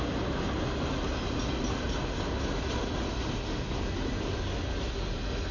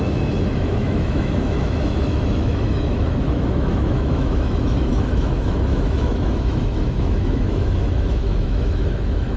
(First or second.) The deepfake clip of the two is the second